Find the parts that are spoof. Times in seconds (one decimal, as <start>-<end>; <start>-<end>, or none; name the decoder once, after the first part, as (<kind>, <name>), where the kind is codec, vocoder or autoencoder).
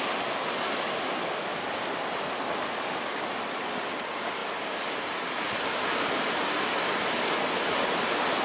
none